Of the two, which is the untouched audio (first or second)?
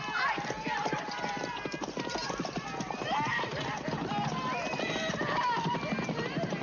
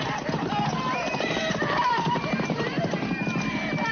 first